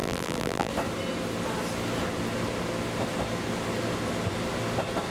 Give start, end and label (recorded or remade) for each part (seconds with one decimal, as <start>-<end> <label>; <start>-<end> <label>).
0.0-0.7 remade; 0.7-5.1 recorded